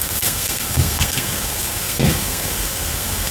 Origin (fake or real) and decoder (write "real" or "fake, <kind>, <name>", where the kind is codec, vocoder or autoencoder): fake, codec, SNAC